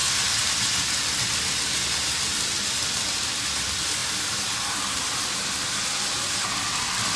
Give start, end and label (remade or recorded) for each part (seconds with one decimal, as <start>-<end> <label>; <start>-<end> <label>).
0.0-7.2 recorded